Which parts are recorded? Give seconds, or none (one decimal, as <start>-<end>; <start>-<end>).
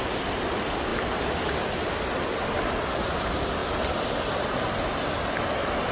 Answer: 0.0-5.9